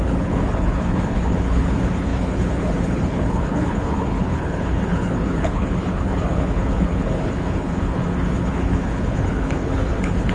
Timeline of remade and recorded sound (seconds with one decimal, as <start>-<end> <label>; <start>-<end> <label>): 0.0-10.3 remade